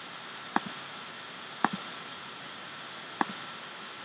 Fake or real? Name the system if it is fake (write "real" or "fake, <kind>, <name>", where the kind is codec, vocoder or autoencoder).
real